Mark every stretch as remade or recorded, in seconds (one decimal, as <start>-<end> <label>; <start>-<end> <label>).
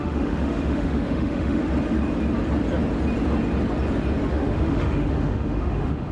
0.0-1.6 remade; 1.6-4.3 recorded; 4.3-6.1 remade